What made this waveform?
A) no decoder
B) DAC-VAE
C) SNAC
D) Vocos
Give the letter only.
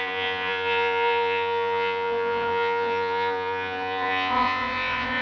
D